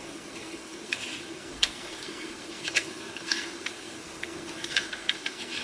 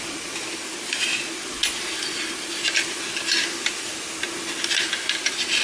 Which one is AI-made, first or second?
first